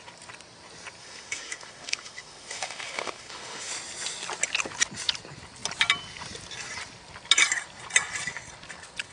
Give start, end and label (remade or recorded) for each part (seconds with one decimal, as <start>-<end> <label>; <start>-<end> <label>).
0.0-1.0 recorded; 1.0-3.7 remade; 3.7-9.1 recorded

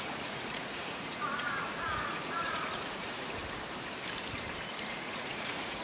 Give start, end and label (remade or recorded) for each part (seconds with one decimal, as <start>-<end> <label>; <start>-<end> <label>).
0.0-3.4 remade; 3.4-4.8 recorded; 4.8-5.8 remade

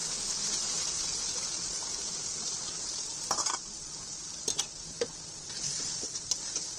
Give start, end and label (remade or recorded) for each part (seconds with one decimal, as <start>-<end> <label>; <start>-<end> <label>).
0.0-6.8 recorded

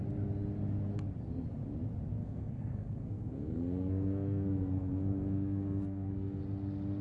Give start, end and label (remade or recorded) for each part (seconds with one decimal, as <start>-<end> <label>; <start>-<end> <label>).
0.0-2.2 recorded; 2.2-6.4 remade; 6.4-7.0 recorded

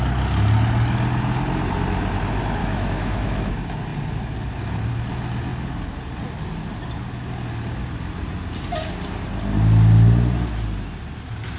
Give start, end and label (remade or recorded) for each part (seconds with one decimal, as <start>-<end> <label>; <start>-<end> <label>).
0.0-2.6 recorded; 2.6-3.5 remade; 3.5-11.6 recorded

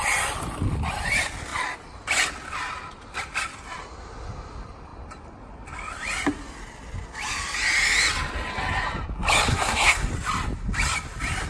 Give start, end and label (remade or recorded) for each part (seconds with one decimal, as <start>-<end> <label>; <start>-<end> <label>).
0.0-9.5 recorded; 9.5-10.1 remade; 10.1-11.5 recorded

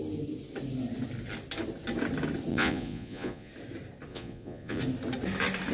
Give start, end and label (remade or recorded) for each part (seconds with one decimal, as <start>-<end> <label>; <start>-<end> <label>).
0.0-2.5 recorded; 2.5-3.5 remade; 3.5-4.1 recorded; 4.1-4.8 remade; 4.8-5.7 recorded